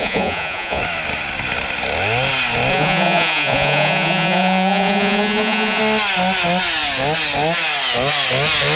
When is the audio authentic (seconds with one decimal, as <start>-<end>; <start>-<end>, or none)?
0.8-2.7; 5.8-8.8